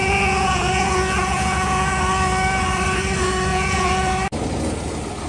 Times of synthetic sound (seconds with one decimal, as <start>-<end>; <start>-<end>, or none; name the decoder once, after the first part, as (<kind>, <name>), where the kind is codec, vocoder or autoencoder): 0.0-2.0 (vocoder, Vocos); 3.5-4.1